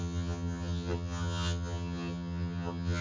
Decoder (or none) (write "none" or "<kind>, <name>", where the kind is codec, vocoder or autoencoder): vocoder, HiFi-GAN